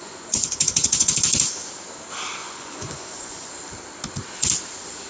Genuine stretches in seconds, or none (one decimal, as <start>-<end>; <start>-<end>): 1.1-2.4; 3.5-5.1